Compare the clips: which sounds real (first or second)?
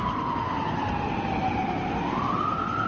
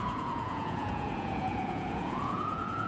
first